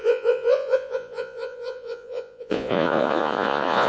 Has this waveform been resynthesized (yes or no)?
yes